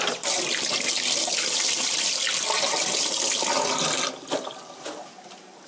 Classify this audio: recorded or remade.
recorded